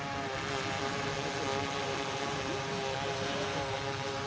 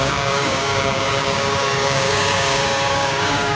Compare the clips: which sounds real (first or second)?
first